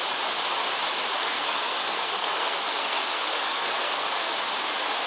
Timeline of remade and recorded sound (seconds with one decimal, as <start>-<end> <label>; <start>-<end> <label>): 0.0-1.2 recorded; 1.2-4.3 remade; 4.3-5.1 recorded

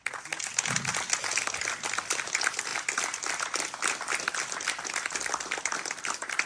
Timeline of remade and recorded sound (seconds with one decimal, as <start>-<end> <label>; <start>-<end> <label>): 0.0-6.5 recorded

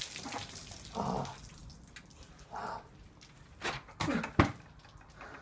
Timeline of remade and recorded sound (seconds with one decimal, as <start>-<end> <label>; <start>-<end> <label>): 0.0-5.4 recorded

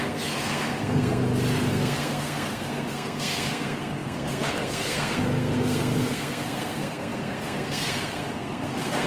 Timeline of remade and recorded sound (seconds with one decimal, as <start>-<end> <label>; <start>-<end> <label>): 0.0-1.2 remade; 1.2-1.7 recorded; 1.7-9.1 remade

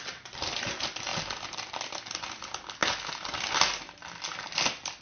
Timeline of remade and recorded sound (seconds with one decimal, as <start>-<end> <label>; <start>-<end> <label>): 0.0-5.0 recorded

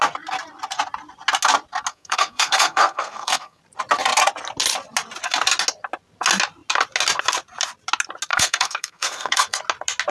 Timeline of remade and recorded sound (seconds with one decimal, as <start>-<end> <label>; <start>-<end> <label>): 0.0-1.9 recorded; 1.9-3.6 remade; 3.6-8.3 recorded; 8.3-9.6 remade; 9.6-10.1 recorded

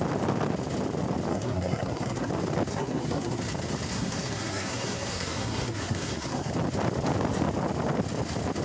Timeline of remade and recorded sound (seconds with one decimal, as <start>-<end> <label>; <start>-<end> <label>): 0.0-1.3 recorded; 1.3-2.3 remade; 2.3-2.7 recorded; 2.7-3.4 remade; 3.4-3.9 recorded; 3.9-6.5 remade; 6.5-8.6 recorded